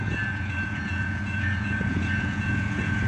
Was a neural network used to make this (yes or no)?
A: yes